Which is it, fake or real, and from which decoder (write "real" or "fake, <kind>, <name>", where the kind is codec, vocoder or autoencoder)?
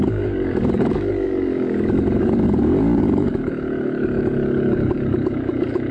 fake, codec, DAC